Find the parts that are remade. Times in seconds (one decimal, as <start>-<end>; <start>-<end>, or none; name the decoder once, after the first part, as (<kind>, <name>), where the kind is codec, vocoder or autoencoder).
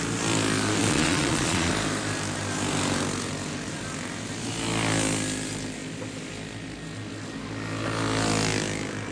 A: 0.8-1.7 (vocoder, Vocos)